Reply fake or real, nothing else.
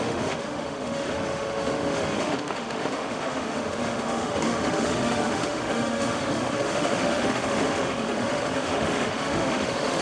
fake